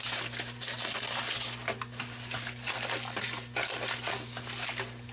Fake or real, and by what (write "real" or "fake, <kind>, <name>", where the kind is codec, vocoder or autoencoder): real